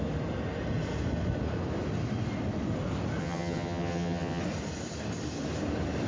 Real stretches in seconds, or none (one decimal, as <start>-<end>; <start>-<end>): 0.0-3.2; 4.4-6.1